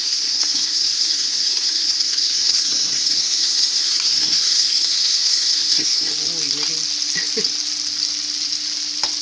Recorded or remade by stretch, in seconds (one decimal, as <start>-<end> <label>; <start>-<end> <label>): 0.0-6.1 remade; 6.1-9.2 recorded